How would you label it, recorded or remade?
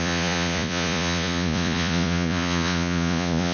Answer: remade